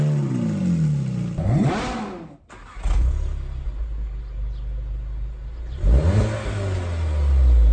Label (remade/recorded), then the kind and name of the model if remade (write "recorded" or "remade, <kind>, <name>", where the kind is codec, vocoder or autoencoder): recorded